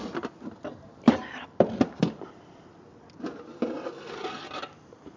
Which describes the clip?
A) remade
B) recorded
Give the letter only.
A